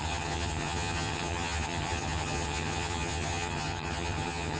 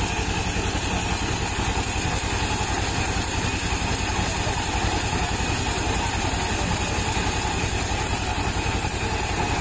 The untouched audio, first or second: second